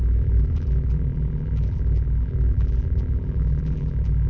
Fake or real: fake